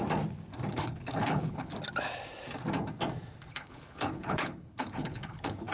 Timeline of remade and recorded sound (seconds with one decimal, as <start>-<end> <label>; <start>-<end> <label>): 0.0-0.7 recorded; 0.7-1.7 remade; 1.7-3.5 recorded; 3.5-5.7 remade